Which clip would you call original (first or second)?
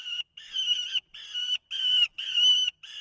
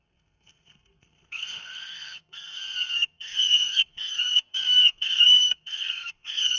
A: first